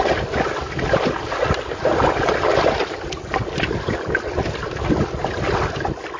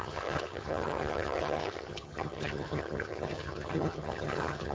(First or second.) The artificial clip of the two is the second